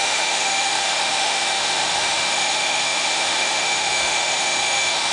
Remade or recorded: remade